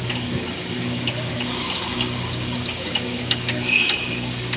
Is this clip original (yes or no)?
no